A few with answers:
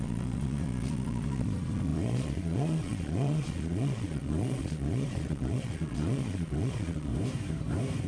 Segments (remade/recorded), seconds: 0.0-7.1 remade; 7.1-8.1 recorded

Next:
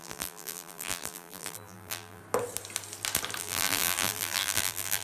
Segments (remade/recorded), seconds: 0.0-2.2 remade; 2.2-3.4 recorded; 3.4-5.0 remade